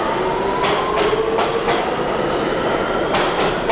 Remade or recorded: recorded